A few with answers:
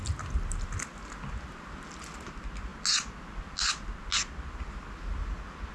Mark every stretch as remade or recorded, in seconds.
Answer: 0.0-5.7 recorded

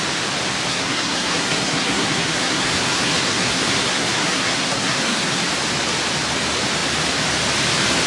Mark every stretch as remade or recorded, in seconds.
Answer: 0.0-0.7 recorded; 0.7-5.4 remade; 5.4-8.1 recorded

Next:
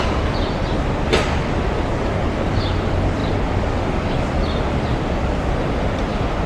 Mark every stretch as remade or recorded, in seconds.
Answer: 0.0-6.5 recorded

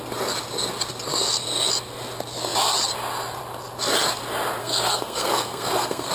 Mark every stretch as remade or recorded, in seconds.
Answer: 0.0-4.6 recorded; 4.6-6.1 remade

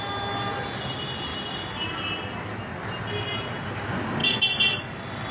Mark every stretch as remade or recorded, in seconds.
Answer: 0.0-5.3 recorded

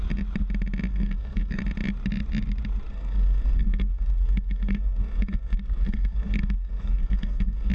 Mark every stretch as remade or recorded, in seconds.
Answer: 0.0-0.9 recorded; 0.9-1.6 remade; 1.6-2.9 recorded; 2.9-7.7 remade

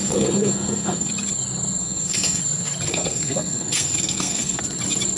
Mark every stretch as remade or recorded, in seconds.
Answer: 0.0-1.1 remade; 1.1-1.8 recorded; 1.8-2.4 remade; 2.4-2.9 recorded; 2.9-4.6 remade; 4.6-5.2 recorded